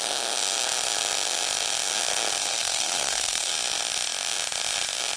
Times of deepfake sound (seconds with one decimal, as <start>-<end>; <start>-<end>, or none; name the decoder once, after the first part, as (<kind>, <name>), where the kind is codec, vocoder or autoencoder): 2.4-3.5 (codec, SNAC)